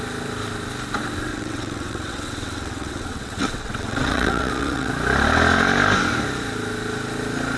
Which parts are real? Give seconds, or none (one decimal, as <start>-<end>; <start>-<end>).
0.0-1.3; 4.9-7.6